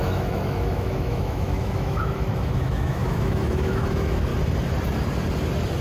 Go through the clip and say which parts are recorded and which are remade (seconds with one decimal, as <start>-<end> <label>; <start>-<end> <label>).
0.0-4.3 remade; 4.3-5.8 recorded

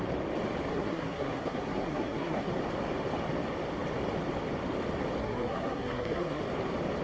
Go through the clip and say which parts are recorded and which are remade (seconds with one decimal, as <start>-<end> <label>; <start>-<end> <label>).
0.0-0.7 recorded; 0.7-2.5 remade; 2.5-5.2 recorded; 5.2-6.4 remade; 6.4-7.0 recorded

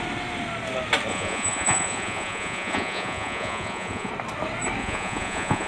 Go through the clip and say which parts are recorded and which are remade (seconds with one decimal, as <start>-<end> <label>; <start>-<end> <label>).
0.0-1.1 recorded; 1.1-4.1 remade; 4.1-4.8 recorded; 4.8-5.7 remade

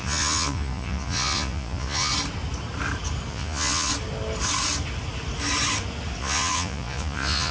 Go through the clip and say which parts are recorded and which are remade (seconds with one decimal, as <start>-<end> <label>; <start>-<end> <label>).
0.0-2.1 remade; 2.1-3.3 recorded; 3.3-3.9 remade; 3.9-6.2 recorded; 6.2-7.5 remade

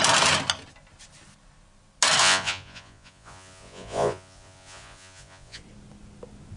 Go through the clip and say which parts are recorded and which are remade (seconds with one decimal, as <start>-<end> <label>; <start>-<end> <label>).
0.0-2.2 recorded; 2.2-5.6 remade; 5.6-6.6 recorded

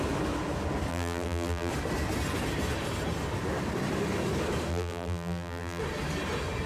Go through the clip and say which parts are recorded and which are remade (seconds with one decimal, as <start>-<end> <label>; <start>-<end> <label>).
0.0-0.9 recorded; 0.9-1.7 remade; 1.7-4.7 recorded; 4.7-5.8 remade; 5.8-6.7 recorded

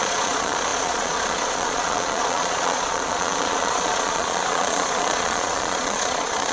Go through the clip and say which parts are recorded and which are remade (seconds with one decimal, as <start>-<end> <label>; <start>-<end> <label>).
0.0-6.5 remade

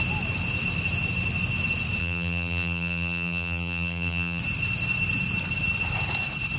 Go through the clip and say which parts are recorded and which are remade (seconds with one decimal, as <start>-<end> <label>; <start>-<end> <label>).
0.0-2.0 recorded; 2.0-4.4 remade; 4.4-6.6 recorded